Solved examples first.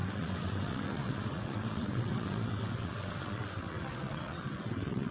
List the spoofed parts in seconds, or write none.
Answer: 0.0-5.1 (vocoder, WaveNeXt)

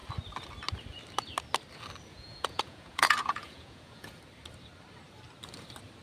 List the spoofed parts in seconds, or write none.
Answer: 2.1-4.2 (vocoder, Vocos)

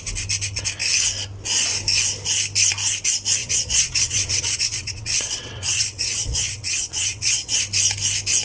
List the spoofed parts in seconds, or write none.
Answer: 3.4-7.6 (vocoder, WaveNeXt)

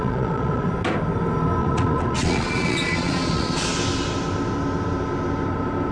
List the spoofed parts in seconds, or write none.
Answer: 0.0-0.7 (vocoder, Vocos); 1.6-3.7

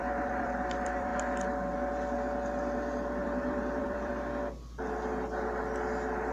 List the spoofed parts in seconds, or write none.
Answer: 0.0-1.1 (vocoder, BigVGAN v2); 3.2-4.1

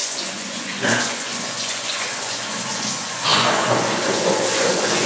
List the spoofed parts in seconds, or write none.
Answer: 0.0-5.1 (vocoder, Vocos)

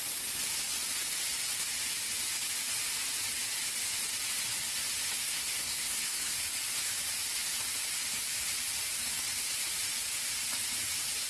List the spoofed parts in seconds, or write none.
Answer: 5.2-6.4 (codec, SNAC)

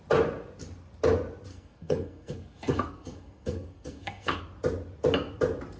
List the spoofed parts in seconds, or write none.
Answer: 1.5-4.4 (codec, SNAC)